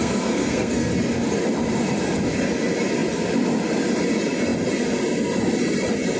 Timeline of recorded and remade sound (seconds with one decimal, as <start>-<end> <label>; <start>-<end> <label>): 0.0-0.9 remade; 0.9-6.2 recorded